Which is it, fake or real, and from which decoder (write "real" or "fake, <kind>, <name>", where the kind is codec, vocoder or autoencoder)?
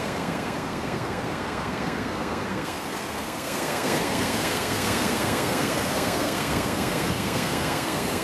fake, codec, SNAC